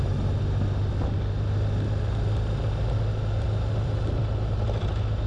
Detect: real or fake real